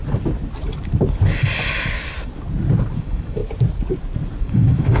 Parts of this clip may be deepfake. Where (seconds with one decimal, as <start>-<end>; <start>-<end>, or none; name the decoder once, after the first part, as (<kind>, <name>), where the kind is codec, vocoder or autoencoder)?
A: 3.0-3.4 (autoencoder, DAC-VAE); 4.4-5.0